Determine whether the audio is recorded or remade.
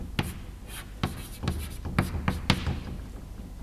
recorded